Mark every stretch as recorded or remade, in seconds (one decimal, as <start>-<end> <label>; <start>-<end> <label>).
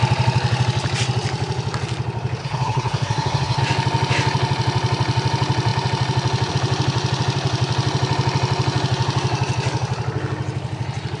0.0-2.4 recorded; 2.4-3.6 remade; 3.6-11.2 recorded